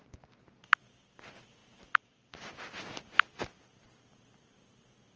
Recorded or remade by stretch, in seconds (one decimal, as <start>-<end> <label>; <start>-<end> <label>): 0.0-5.2 recorded